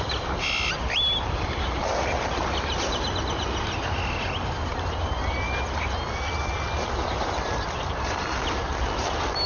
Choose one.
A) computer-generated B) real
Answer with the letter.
B